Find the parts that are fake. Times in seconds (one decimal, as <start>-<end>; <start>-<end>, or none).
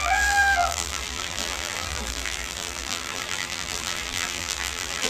0.0-5.1